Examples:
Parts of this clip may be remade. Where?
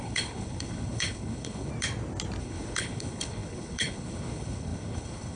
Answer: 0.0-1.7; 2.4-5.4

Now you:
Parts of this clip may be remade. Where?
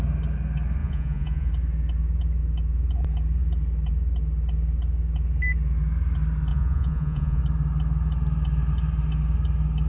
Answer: 0.8-1.5; 6.5-7.4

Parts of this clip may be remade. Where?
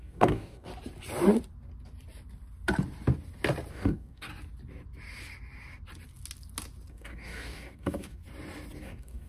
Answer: 0.0-0.7; 3.7-4.3; 6.9-8.2; 8.8-9.3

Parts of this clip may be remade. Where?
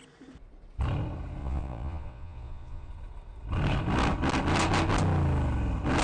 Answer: 1.4-2.9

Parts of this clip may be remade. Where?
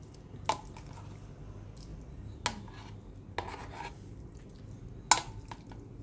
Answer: none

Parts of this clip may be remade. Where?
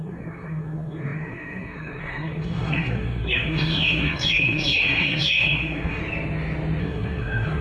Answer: 0.0-6.0; 6.8-7.6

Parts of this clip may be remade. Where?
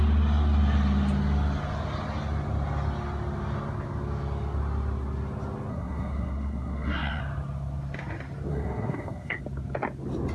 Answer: 5.7-7.2; 8.5-9.4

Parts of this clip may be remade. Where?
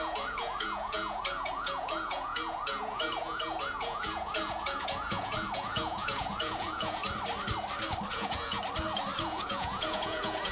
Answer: 0.0-7.0; 8.1-8.6; 9.2-10.5